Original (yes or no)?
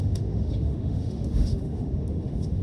no